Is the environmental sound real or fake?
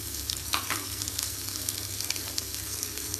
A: fake